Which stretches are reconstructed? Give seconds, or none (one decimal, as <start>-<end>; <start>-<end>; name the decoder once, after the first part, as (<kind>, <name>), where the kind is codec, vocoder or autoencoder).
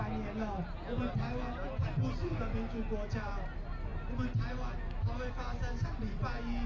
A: none